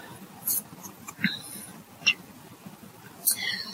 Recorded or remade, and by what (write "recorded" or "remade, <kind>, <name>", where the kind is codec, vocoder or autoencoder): recorded